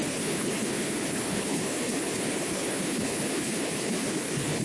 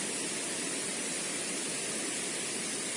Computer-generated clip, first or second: first